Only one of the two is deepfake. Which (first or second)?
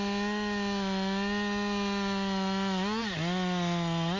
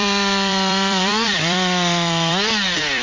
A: second